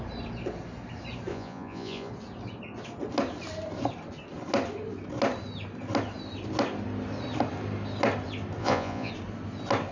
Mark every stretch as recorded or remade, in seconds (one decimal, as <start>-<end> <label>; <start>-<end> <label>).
0.0-1.3 recorded; 1.3-2.1 remade; 2.1-8.6 recorded; 8.6-9.1 remade; 9.1-9.9 recorded